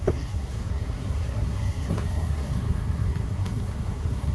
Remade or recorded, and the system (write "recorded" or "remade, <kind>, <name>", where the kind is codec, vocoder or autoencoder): remade, codec, SNAC